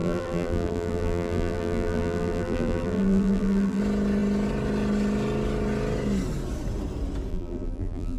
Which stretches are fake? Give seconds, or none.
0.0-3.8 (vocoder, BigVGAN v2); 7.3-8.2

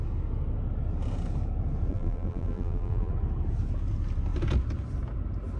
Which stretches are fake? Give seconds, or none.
1.9-3.1 (vocoder, BigVGAN v2)

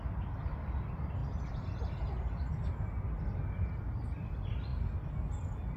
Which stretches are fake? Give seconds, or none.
none